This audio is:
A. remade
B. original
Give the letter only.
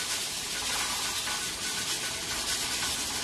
B